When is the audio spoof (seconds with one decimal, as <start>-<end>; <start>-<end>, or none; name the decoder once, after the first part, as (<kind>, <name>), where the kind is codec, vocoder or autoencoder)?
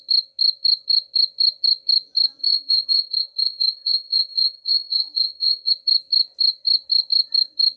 2.4-5.7 (codec, SNAC)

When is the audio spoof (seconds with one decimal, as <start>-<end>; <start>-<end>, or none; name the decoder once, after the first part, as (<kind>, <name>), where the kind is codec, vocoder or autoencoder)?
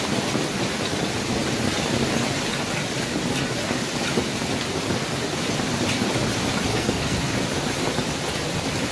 6.7-7.3 (codec, SNAC)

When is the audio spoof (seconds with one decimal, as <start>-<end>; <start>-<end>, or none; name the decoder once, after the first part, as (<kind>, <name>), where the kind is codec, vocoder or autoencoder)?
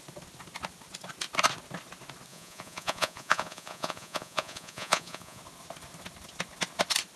2.3-5.4 (vocoder, Vocos)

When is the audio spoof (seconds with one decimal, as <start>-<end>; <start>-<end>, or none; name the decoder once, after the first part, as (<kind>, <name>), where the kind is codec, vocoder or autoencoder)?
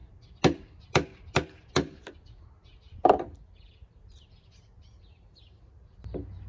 none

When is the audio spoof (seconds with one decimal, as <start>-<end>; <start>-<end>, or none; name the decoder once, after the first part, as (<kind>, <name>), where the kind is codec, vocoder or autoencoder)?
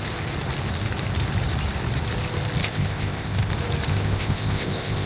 2.6-3.5 (codec, ZipCodec); 3.9-5.1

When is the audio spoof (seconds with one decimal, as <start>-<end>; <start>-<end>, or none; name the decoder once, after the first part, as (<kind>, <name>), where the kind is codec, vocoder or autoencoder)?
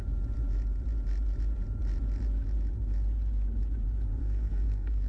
4.2-5.1 (codec, SNAC)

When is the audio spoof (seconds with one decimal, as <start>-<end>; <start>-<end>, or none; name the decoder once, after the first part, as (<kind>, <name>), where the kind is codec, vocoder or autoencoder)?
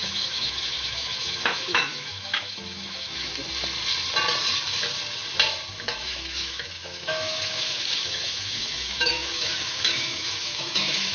0.0-3.3 (autoencoder, DAC-VAE); 5.7-11.1